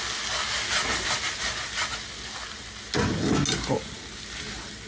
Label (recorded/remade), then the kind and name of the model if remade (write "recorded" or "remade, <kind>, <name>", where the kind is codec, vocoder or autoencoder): recorded